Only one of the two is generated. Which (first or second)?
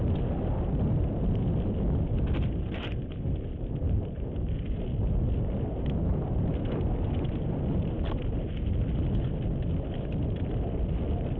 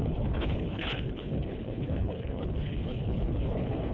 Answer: second